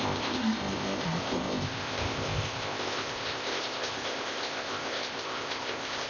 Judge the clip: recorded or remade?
remade